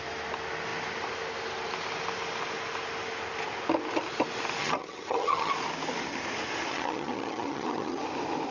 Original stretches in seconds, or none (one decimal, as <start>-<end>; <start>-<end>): 0.0-4.6; 5.5-6.7; 8.0-8.5